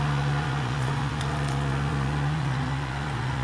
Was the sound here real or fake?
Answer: fake